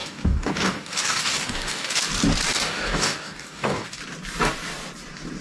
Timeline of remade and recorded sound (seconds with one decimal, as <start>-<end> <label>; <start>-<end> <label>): 0.0-2.0 remade; 2.0-2.5 recorded; 2.5-4.0 remade; 4.0-5.4 recorded